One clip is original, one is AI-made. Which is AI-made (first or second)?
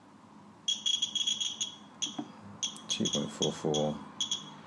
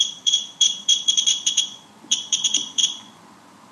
second